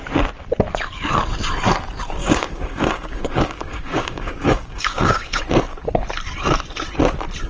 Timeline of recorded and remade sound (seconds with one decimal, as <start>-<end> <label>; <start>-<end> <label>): 0.0-2.2 recorded; 2.2-5.4 remade; 5.4-7.5 recorded